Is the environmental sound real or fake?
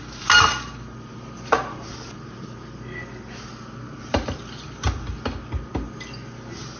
real